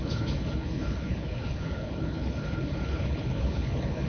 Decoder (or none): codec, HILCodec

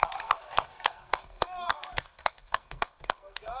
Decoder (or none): codec, SNAC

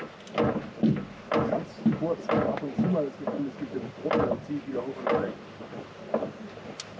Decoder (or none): none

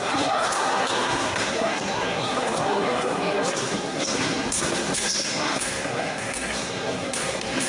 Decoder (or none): codec, SNAC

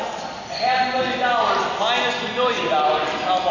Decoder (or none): none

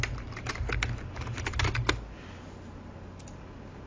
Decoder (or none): none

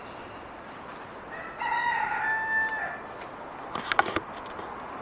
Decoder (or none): none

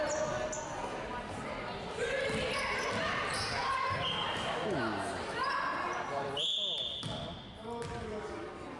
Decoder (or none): none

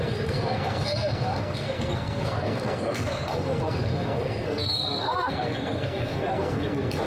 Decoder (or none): codec, SNAC